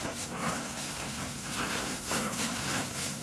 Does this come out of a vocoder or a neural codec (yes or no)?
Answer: yes